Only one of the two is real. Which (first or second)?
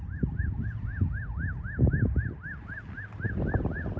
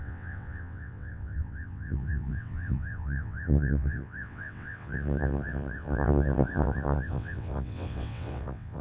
first